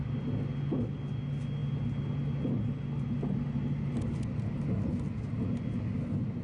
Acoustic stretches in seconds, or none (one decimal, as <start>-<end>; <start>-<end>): 0.0-6.4